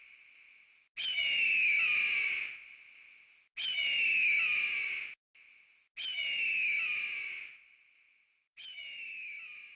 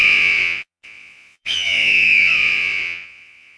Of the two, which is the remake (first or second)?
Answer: second